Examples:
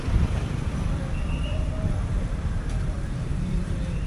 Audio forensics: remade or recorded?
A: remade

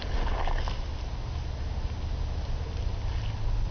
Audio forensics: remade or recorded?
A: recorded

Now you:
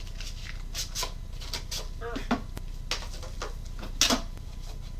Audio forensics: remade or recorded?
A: recorded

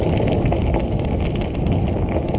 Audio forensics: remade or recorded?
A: recorded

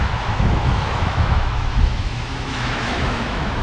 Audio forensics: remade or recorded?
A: remade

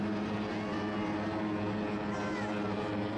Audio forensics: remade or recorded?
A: recorded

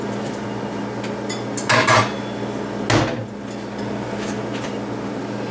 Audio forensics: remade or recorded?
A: recorded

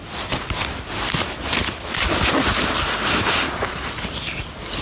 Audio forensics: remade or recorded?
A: recorded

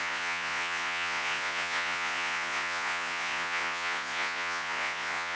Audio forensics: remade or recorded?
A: remade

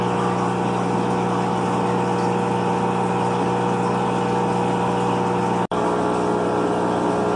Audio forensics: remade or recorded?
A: recorded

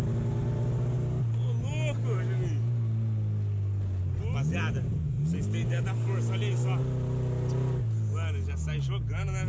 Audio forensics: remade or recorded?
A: recorded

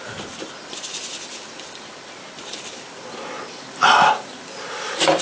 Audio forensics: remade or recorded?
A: recorded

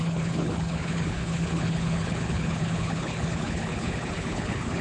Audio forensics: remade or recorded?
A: remade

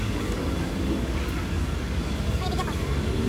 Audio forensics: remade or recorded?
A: remade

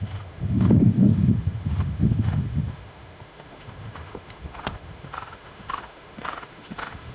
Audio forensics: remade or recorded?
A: remade